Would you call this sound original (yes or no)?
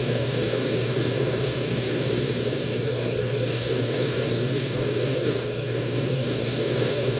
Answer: no